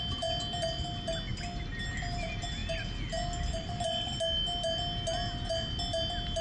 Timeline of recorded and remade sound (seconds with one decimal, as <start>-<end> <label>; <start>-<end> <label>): 0.0-6.4 recorded